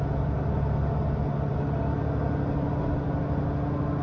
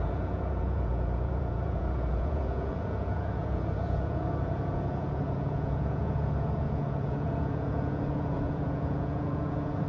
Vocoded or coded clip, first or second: second